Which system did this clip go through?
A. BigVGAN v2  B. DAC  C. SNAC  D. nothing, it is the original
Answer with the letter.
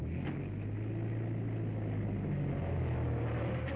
D